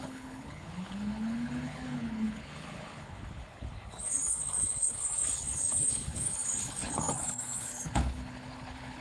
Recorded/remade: remade